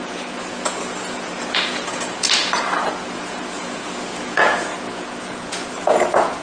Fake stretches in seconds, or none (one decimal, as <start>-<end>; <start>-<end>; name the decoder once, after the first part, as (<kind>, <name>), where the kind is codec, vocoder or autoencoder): 0.0-6.4 (vocoder, Vocos)